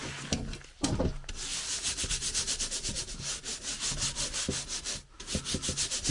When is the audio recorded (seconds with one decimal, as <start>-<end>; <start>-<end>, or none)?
0.0-6.1